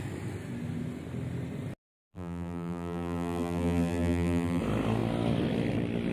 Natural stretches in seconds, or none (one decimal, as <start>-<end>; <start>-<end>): 0.0-2.1; 4.6-6.1